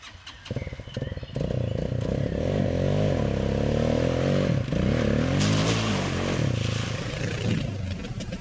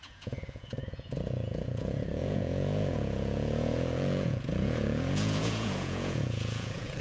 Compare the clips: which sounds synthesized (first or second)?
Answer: second